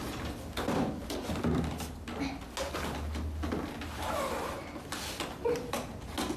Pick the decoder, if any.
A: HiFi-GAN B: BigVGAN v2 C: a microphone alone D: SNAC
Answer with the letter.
C